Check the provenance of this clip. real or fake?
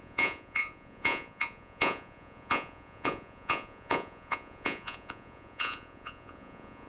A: fake